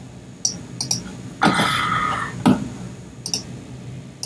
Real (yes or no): yes